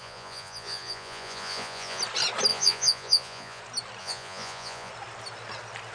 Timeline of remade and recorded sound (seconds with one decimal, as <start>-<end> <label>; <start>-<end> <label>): 0.0-2.0 remade; 2.0-2.5 recorded; 2.5-3.6 remade; 3.6-4.0 recorded; 4.0-4.9 remade; 4.9-5.9 recorded